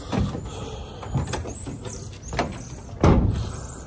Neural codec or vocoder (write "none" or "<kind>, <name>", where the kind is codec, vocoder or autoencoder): none